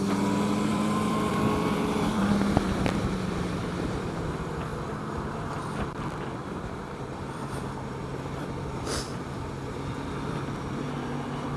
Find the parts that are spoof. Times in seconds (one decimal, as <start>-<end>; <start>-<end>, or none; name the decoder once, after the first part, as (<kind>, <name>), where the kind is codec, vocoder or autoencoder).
0.7-4.3 (vocoder, BigVGAN v2); 4.7-5.5; 6.4-10.1